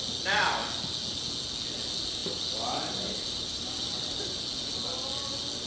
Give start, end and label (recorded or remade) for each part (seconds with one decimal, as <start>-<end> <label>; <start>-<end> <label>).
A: 0.0-2.2 recorded; 2.2-4.7 remade; 4.7-5.7 recorded